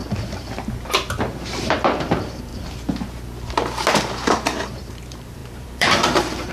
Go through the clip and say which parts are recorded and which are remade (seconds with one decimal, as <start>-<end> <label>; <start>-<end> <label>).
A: 0.0-2.1 recorded; 2.1-2.5 remade; 2.5-3.9 recorded; 3.9-6.5 remade